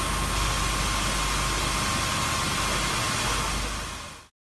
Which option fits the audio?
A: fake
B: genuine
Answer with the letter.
B